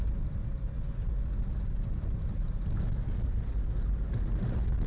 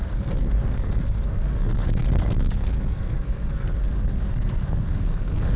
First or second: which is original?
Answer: first